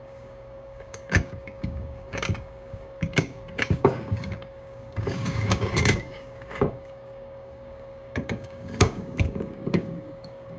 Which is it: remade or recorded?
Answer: remade